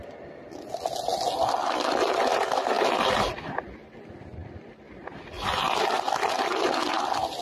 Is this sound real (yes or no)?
yes